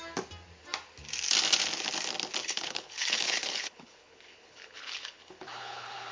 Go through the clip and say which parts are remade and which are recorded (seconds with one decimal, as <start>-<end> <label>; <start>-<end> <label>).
0.0-2.4 recorded; 2.4-6.1 remade